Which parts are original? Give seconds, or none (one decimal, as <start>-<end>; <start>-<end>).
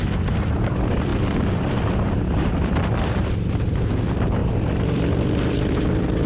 none